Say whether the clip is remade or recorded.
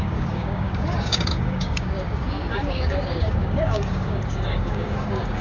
remade